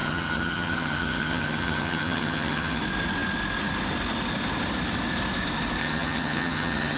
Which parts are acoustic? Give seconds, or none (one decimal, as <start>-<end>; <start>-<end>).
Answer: 2.8-5.8